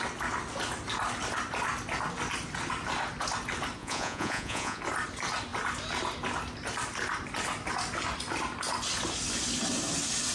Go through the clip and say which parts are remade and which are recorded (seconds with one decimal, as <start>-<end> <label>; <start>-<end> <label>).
0.0-3.8 recorded; 3.8-4.8 remade; 4.8-10.3 recorded